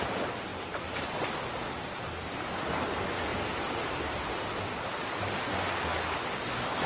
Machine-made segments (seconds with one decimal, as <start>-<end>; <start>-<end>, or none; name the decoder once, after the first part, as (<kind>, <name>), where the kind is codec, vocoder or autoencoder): none

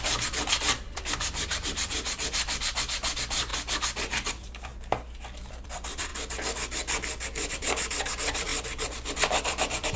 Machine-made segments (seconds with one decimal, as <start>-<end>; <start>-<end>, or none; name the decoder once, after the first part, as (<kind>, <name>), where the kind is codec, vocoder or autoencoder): 0.0-3.5 (vocoder, BigVGAN v2); 4.3-4.7; 5.5-6.1; 7.5-8.5; 9.4-10.0

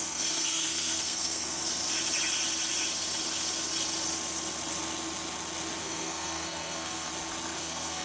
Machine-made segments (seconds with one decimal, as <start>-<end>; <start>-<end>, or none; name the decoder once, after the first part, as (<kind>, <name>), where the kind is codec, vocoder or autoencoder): 0.0-1.6 (codec, SNAC); 5.8-7.1; 7.6-8.0

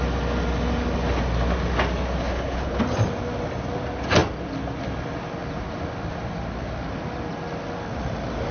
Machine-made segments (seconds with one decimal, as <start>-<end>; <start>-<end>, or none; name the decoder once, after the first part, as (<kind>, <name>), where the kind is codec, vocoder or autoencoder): 2.2-2.8 (codec, HILCodec)

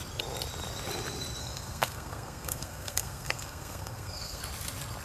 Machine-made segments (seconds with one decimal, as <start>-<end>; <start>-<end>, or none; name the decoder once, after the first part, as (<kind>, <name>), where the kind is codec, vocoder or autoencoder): 1.4-4.4 (codec, SNAC)

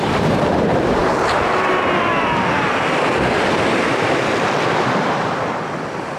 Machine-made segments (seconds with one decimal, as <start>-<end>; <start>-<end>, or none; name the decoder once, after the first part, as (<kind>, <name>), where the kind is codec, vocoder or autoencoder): 0.0-6.2 (vocoder, BigVGAN v2)

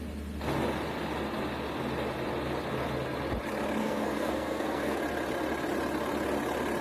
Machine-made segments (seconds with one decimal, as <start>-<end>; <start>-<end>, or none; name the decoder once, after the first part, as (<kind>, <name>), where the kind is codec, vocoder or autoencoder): 3.8-5.0 (codec, SNAC)

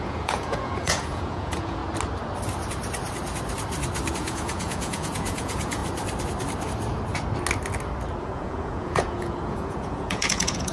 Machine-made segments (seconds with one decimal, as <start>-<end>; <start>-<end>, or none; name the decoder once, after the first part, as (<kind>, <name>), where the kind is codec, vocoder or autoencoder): 0.0-1.8 (vocoder, Vocos); 4.1-5.8; 8.2-10.7